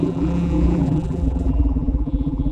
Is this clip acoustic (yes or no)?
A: no